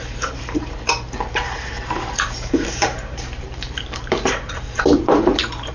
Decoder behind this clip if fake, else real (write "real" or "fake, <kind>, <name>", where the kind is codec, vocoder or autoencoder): fake, vocoder, BigVGAN v2